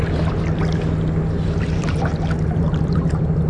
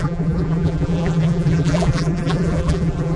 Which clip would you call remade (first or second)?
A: second